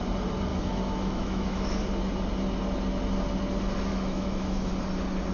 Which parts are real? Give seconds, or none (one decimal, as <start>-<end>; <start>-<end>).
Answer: 0.0-0.5; 1.7-3.9; 4.7-5.3